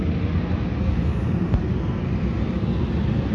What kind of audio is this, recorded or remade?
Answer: recorded